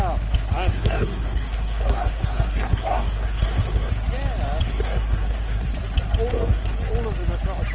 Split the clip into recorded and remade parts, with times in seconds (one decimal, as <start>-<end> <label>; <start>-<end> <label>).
0.0-0.7 recorded; 0.7-3.9 remade; 3.9-4.7 recorded; 4.7-5.7 remade; 5.7-6.3 recorded; 6.3-6.9 remade; 6.9-7.7 recorded